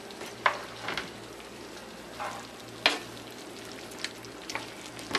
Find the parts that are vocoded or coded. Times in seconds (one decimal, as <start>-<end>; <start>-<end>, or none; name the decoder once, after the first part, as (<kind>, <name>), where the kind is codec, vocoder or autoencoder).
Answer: none